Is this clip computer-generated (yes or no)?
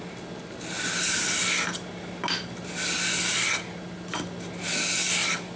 no